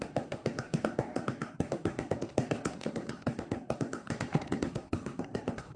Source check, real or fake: fake